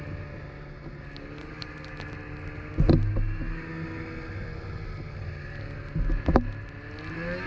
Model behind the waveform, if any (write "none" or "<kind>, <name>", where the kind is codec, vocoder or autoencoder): none